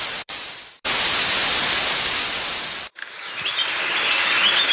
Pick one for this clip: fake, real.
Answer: real